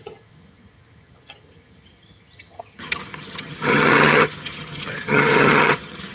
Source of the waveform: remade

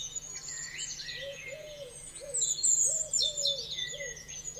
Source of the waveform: remade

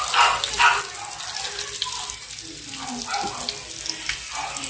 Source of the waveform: recorded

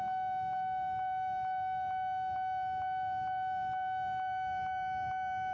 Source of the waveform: recorded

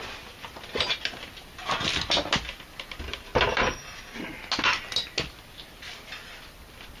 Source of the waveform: recorded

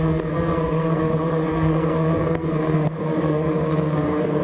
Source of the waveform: remade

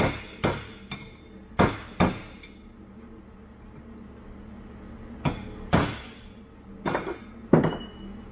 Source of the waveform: recorded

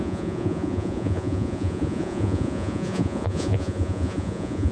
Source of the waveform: remade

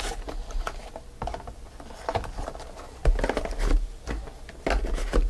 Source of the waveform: recorded